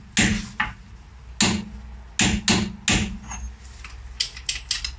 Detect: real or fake real